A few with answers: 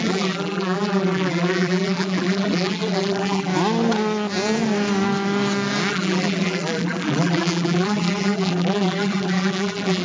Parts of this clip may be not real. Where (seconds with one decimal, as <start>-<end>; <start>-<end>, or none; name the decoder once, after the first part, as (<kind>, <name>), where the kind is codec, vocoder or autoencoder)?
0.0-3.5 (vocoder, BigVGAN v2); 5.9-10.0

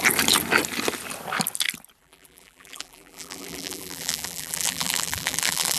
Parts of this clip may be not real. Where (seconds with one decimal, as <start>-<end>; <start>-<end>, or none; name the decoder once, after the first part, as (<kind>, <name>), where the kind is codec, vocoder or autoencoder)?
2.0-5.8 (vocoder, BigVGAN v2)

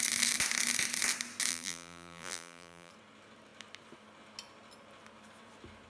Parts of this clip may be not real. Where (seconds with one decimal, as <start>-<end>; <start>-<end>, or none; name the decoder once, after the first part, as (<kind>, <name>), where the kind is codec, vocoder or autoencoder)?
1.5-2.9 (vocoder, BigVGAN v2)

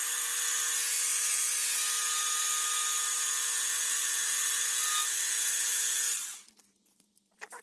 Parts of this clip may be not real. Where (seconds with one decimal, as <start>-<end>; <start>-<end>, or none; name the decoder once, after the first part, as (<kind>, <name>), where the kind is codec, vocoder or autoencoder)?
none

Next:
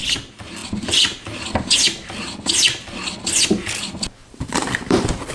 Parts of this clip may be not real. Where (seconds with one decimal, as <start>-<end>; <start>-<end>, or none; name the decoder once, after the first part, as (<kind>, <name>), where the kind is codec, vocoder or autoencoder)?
4.2-5.3 (vocoder, BigVGAN v2)

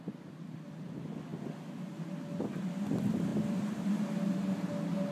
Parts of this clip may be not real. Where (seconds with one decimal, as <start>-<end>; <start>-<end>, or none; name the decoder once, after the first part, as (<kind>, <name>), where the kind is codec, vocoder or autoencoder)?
none